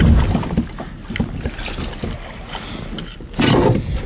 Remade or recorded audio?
recorded